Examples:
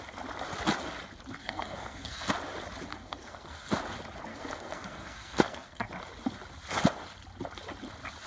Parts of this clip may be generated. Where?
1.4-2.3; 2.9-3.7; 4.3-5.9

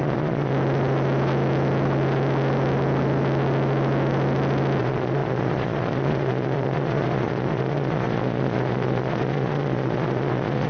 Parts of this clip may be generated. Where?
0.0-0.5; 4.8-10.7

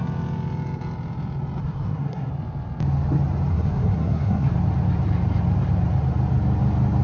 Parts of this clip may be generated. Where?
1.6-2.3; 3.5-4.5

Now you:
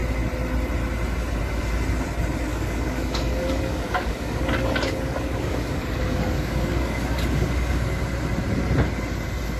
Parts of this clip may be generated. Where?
2.5-7.8

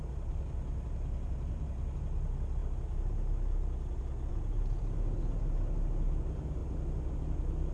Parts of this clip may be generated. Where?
none

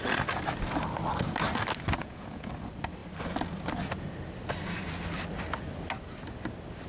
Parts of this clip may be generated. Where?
2.0-2.5

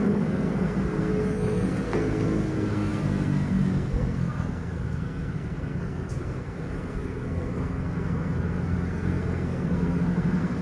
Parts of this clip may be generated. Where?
0.0-10.6